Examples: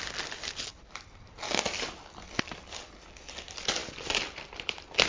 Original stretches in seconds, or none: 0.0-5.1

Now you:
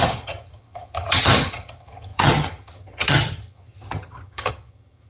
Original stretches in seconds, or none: none

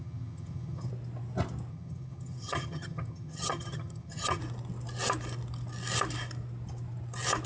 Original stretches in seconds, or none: 0.9-1.7; 4.4-7.5

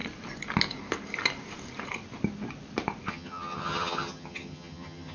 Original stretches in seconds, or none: 0.0-3.1

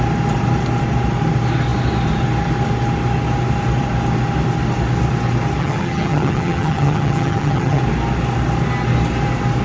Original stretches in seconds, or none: 0.0-5.6; 7.8-9.6

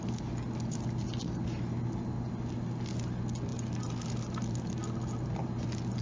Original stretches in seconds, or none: 0.0-6.0

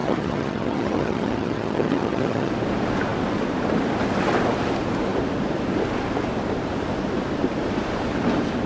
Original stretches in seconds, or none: 2.5-8.7

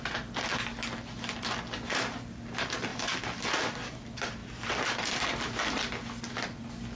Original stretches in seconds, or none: 0.0-7.0